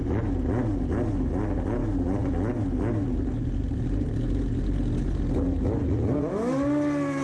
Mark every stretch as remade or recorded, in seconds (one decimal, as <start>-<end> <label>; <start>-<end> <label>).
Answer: 0.0-7.2 recorded